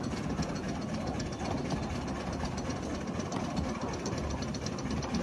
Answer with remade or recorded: recorded